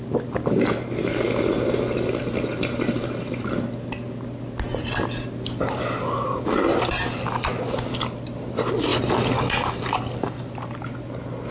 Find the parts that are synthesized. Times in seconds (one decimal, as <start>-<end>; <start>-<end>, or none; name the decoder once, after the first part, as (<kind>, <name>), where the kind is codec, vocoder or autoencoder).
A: none